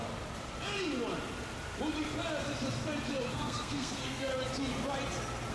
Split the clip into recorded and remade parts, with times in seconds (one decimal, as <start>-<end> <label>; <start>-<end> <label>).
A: 0.0-3.3 recorded; 3.3-4.3 remade; 4.3-5.5 recorded